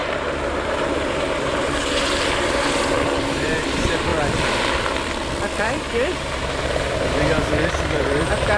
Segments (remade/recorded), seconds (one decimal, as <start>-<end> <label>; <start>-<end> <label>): 0.0-4.1 remade; 4.1-5.6 recorded; 5.6-8.6 remade